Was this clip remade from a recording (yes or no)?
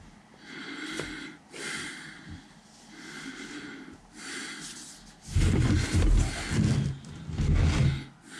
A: no